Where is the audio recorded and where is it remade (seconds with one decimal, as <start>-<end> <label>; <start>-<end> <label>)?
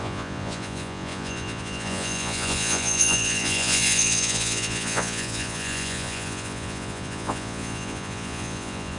0.0-9.0 remade